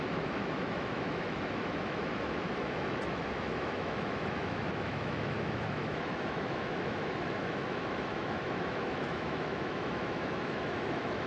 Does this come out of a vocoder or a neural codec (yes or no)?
yes